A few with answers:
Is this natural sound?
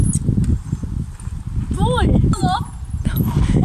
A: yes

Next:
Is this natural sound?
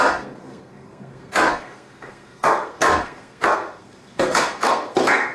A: no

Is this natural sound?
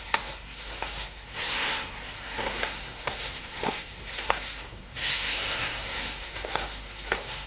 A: no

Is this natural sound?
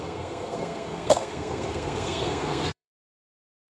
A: no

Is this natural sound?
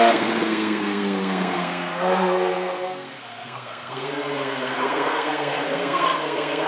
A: no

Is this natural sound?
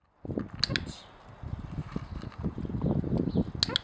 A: yes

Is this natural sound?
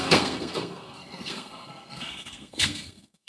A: no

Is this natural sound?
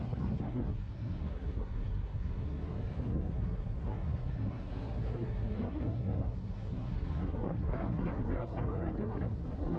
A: no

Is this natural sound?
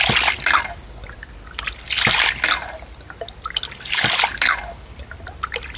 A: yes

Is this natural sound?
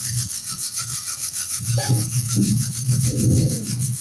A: no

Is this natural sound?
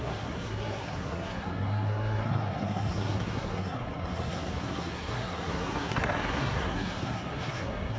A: no